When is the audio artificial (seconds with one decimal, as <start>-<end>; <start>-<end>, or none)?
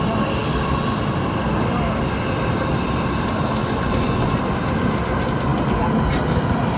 3.6-4.3